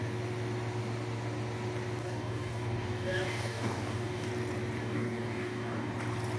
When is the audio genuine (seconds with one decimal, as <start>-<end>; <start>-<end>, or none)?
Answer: 0.0-2.0; 4.3-4.8; 5.9-6.4